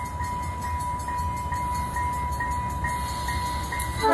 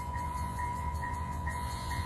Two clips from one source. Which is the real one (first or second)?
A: first